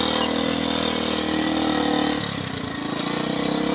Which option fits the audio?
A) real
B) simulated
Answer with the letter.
A